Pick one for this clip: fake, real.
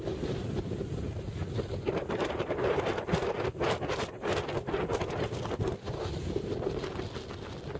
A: real